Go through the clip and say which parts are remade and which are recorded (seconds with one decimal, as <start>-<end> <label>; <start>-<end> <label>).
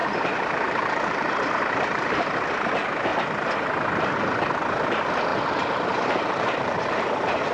0.0-2.2 remade; 2.2-5.3 recorded; 5.3-7.5 remade